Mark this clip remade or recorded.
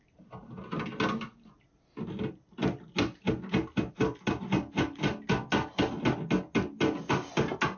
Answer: recorded